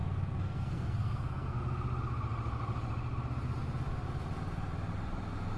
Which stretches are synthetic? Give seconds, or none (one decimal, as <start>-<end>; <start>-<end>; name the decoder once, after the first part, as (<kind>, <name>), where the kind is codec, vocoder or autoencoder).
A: 0.0-1.6 (codec, SNAC)